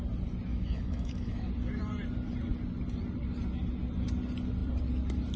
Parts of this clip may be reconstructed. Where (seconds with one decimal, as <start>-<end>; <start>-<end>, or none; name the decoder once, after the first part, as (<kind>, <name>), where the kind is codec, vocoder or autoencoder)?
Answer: 0.5-1.5 (autoencoder, DAC-VAE)